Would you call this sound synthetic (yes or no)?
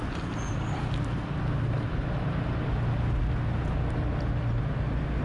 no